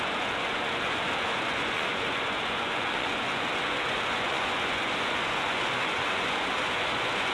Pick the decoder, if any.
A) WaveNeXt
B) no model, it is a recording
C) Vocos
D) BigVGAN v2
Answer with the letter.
C